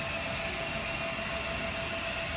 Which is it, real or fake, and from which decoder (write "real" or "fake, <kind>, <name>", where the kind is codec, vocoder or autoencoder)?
real